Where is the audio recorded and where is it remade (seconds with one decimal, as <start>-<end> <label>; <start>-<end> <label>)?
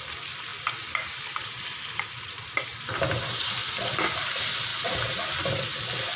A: 0.0-0.5 remade; 0.5-1.8 recorded; 1.8-4.7 remade; 4.7-6.2 recorded